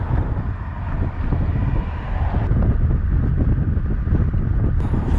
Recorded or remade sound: recorded